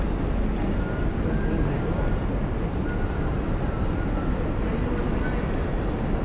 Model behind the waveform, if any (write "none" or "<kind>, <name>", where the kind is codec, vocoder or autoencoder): none